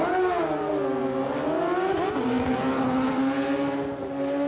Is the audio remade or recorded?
recorded